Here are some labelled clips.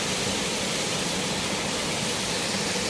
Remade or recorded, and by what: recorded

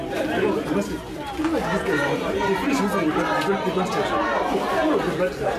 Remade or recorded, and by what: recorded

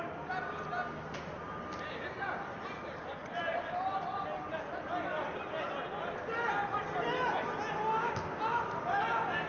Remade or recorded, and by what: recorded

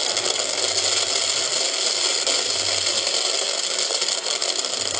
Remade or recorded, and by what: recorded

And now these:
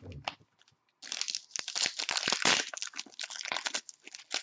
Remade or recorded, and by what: recorded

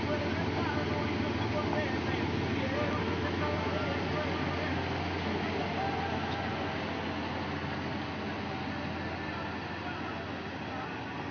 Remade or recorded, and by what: recorded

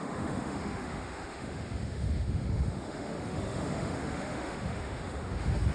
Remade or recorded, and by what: remade, autoencoder, DAC-VAE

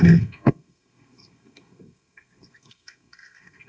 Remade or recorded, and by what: remade, codec, SNAC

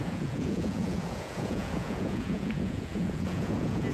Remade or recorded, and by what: remade, vocoder, Vocos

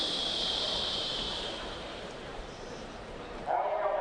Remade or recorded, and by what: remade, vocoder, BigVGAN v2